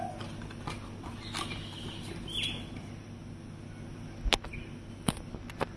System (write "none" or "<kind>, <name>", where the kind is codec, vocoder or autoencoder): none